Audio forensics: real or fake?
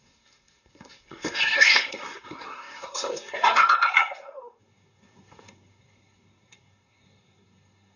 fake